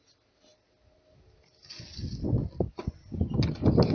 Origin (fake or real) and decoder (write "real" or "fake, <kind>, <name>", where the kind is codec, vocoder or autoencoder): real